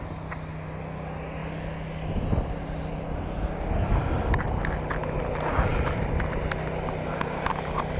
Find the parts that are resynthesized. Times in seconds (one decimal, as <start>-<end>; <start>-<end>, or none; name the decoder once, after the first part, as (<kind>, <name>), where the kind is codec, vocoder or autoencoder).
none